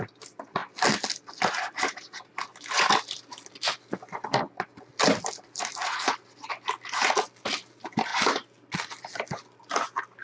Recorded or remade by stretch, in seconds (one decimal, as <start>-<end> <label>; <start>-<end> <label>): 0.0-10.2 recorded